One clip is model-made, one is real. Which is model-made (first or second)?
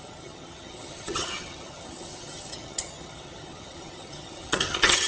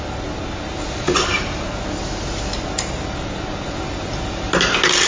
first